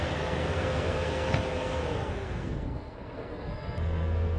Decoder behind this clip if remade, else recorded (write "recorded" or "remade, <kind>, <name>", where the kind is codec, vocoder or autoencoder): remade, codec, SNAC